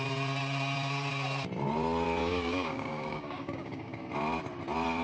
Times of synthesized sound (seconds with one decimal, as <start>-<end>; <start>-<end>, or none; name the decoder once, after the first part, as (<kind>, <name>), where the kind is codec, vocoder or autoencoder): 2.2-4.0 (codec, DAC)